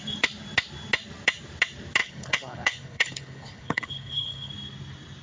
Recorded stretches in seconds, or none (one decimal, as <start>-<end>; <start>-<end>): 0.0-2.0; 4.5-5.2